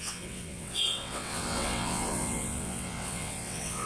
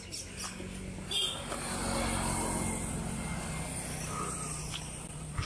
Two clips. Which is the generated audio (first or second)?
first